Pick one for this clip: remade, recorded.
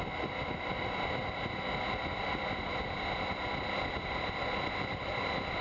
recorded